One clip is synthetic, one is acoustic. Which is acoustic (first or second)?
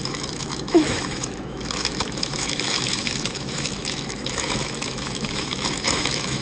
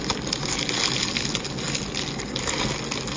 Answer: second